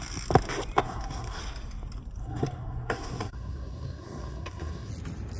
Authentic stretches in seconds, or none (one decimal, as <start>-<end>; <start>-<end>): 0.0-0.8; 1.4-2.2; 4.9-5.4